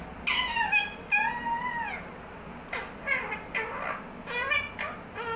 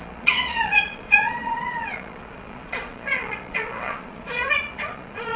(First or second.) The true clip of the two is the first